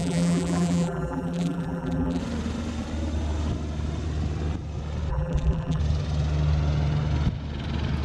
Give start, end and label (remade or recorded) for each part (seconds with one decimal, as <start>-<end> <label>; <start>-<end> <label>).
0.0-2.2 remade; 2.2-5.1 recorded; 5.1-5.8 remade; 5.8-8.0 recorded